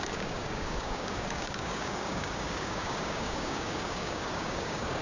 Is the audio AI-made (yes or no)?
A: yes